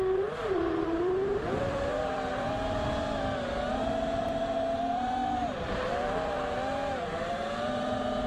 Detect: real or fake fake